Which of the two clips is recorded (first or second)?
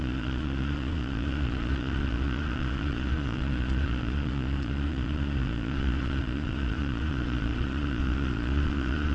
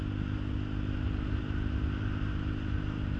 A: second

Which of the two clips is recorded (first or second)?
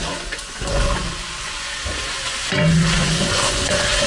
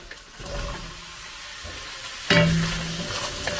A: second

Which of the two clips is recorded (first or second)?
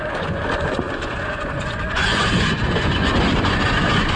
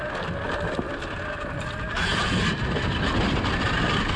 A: second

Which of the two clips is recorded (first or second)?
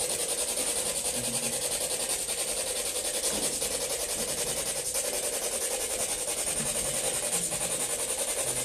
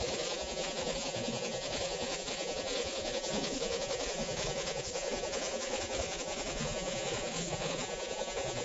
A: first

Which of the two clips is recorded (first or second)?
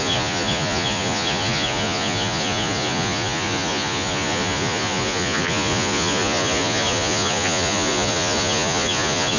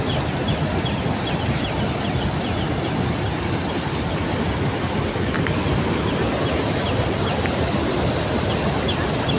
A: second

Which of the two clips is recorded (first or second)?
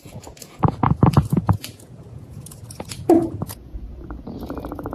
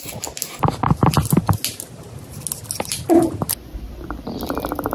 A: second